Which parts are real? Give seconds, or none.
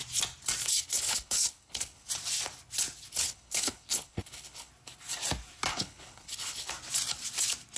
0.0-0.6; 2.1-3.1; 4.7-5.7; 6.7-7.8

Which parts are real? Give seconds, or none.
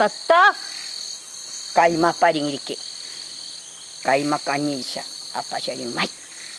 0.0-4.9; 5.6-6.6